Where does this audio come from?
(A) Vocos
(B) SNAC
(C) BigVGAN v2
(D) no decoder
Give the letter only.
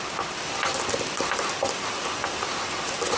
D